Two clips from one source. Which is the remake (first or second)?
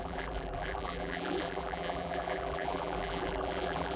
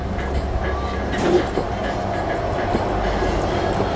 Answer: first